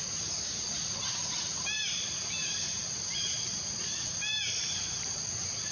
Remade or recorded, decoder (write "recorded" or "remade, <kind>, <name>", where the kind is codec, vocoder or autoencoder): recorded